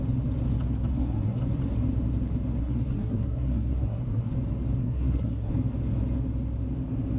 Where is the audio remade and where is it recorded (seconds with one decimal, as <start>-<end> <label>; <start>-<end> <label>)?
0.0-0.9 recorded; 0.9-1.4 remade; 1.4-2.6 recorded; 2.6-4.3 remade; 4.3-4.8 recorded; 4.8-5.5 remade; 5.5-7.2 recorded